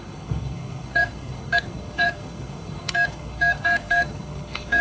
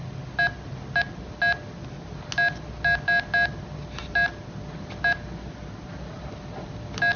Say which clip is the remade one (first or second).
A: first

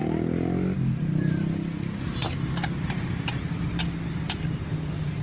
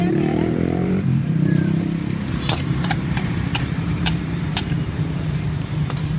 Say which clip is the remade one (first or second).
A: second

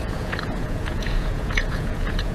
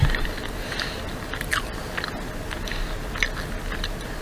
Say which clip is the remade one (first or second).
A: first